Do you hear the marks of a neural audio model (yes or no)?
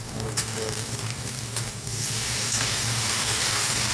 yes